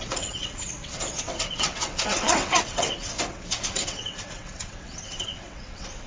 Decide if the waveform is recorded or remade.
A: remade